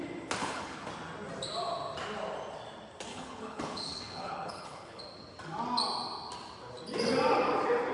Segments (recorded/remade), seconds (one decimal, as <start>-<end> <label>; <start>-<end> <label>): 0.0-0.4 recorded; 0.4-0.9 remade; 0.9-3.1 recorded; 3.1-5.0 remade; 5.0-7.9 recorded